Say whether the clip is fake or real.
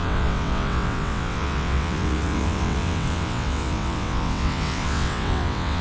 fake